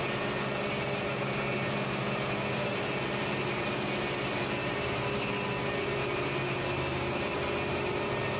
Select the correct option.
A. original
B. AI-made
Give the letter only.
A